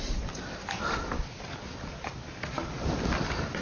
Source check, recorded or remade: recorded